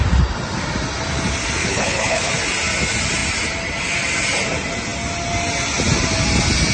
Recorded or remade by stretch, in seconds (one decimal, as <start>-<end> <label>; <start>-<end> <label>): 0.0-1.6 recorded; 1.6-2.3 remade; 2.3-6.7 recorded